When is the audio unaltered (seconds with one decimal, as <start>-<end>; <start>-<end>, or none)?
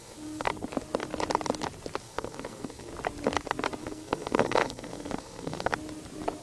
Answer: 0.5-2.0; 2.9-3.8; 5.7-6.4